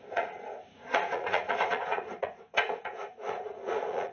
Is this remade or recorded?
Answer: remade